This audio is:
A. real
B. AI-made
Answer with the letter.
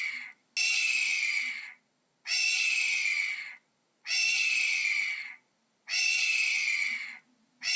A